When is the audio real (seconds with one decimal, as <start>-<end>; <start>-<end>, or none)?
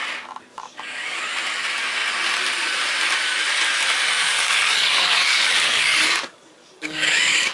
0.0-0.5; 1.2-4.2